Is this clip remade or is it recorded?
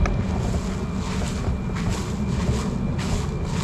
recorded